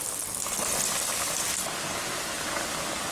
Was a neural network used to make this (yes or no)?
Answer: no